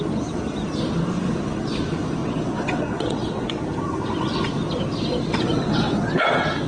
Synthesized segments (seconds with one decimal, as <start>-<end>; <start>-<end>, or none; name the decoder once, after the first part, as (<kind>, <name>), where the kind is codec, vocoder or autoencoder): 2.2-3.6 (vocoder, WaveNeXt); 5.3-6.2